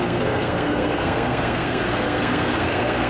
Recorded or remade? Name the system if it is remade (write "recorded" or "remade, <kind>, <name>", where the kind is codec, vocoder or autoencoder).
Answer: remade, codec, SNAC